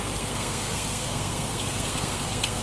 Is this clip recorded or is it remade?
remade